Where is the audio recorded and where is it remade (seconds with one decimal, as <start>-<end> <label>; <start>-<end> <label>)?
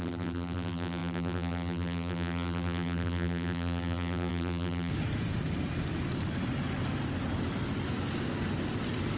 0.0-4.9 remade; 4.9-9.2 recorded